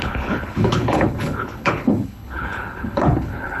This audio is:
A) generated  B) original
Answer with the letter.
A